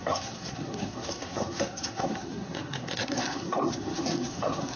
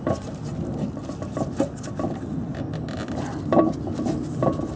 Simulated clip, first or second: first